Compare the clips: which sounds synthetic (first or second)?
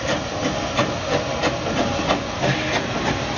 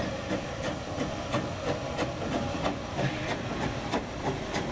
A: second